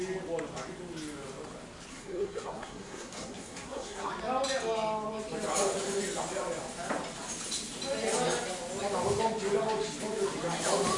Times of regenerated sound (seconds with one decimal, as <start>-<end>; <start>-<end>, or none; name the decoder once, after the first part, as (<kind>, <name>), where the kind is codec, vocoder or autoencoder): 1.9-4.1 (codec, SNAC)